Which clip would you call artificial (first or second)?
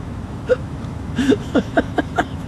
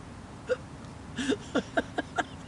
first